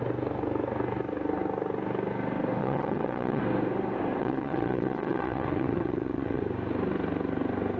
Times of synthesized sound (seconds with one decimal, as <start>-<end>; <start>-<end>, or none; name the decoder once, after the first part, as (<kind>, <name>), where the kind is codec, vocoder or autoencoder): 2.6-3.4 (vocoder, WaveNeXt); 4.2-6.4